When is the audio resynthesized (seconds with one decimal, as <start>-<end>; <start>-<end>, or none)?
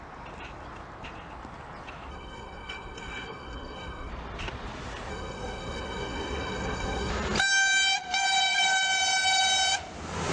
2.1-4.1; 5.1-7.1